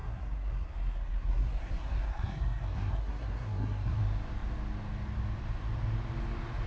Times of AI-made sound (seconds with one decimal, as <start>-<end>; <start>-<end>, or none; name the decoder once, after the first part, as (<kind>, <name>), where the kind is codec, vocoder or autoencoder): 0.0-4.0 (codec, SNAC)